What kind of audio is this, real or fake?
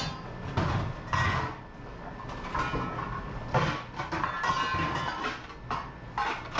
real